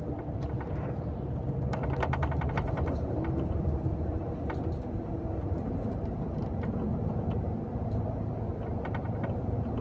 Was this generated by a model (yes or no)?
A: yes